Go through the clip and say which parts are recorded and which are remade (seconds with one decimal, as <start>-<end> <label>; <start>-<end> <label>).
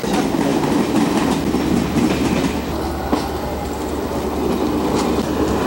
0.0-5.7 recorded